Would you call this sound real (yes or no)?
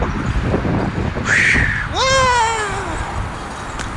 yes